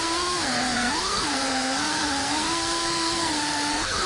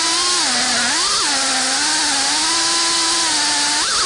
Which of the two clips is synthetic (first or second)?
first